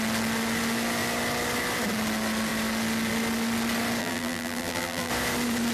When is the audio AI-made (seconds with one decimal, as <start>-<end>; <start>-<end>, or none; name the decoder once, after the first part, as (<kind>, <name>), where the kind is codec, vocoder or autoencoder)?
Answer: 4.0-5.1 (vocoder, BigVGAN v2)